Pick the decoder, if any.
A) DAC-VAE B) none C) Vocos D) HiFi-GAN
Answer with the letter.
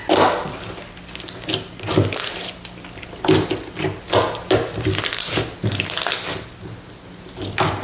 B